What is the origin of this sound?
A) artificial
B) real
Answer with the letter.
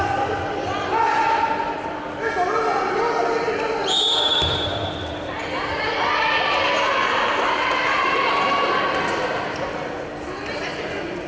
B